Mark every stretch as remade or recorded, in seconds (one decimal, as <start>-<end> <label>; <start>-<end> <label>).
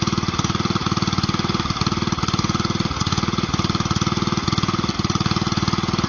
0.0-6.1 recorded